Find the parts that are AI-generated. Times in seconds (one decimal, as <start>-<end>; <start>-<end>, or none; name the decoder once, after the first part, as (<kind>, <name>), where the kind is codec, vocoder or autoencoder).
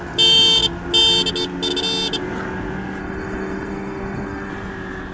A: 3.0-4.5 (codec, SNAC)